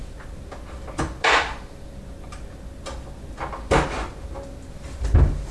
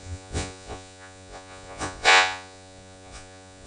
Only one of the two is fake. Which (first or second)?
second